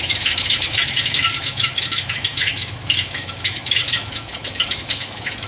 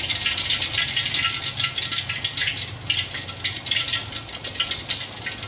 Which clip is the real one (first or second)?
second